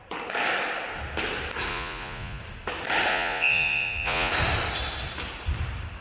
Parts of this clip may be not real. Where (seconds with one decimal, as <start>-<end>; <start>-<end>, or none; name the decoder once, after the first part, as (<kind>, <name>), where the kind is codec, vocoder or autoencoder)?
1.7-2.4 (vocoder, Vocos); 3.1-4.3